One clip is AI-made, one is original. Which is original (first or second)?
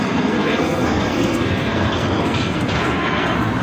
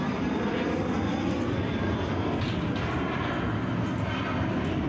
second